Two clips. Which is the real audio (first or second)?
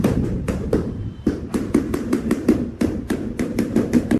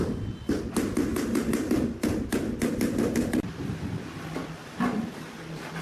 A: second